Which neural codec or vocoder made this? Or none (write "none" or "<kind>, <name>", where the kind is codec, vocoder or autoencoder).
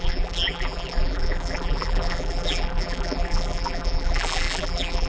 vocoder, BigVGAN v2